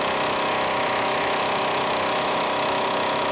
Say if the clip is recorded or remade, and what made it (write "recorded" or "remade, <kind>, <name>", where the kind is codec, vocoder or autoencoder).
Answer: remade, autoencoder, DAC-VAE